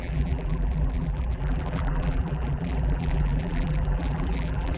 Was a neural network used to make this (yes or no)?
yes